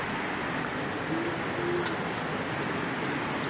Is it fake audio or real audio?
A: real